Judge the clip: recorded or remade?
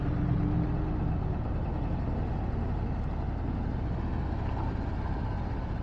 recorded